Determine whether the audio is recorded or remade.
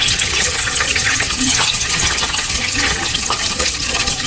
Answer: remade